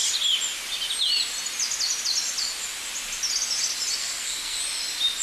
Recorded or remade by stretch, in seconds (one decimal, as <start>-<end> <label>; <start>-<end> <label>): 0.0-4.0 recorded; 4.0-4.6 remade; 4.6-5.2 recorded